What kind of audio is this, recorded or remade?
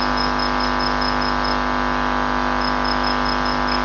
recorded